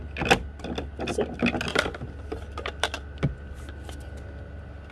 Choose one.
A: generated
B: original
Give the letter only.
B